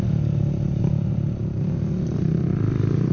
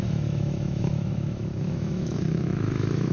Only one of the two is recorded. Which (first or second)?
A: first